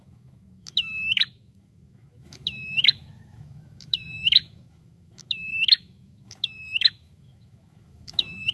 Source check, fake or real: fake